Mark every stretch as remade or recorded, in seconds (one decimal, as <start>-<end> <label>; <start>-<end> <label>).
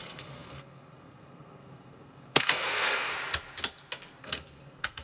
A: 0.0-3.1 remade; 3.1-4.2 recorded; 4.2-5.0 remade